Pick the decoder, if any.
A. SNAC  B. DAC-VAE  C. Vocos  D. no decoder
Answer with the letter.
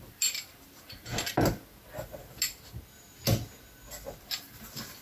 D